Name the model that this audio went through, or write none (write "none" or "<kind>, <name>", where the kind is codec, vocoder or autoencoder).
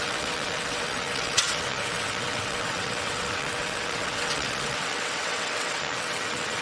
vocoder, WaveNeXt